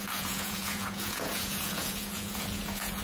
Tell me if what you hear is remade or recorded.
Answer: remade